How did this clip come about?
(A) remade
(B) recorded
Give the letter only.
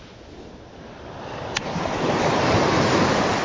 B